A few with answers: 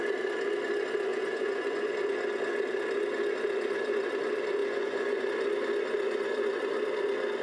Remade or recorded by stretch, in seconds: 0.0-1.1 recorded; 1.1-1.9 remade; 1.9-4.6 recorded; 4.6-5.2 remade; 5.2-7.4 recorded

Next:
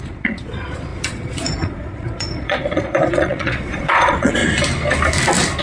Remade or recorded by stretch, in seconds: 0.0-4.4 remade; 4.4-5.6 recorded

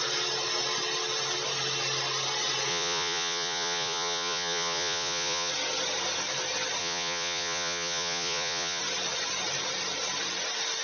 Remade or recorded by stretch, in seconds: 0.0-2.7 recorded; 2.7-5.5 remade; 5.5-6.8 recorded; 6.8-8.8 remade; 8.8-10.8 recorded

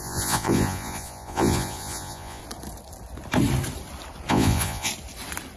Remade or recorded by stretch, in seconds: 0.0-2.4 remade; 2.4-4.3 recorded; 4.3-4.9 remade; 4.9-5.6 recorded